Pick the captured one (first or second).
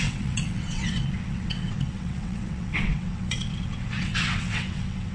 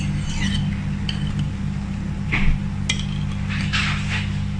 second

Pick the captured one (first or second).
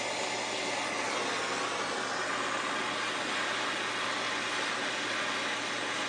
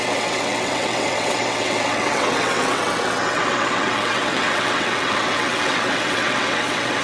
first